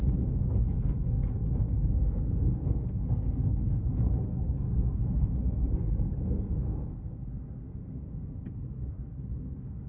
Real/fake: fake